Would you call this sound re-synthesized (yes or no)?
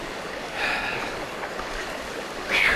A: yes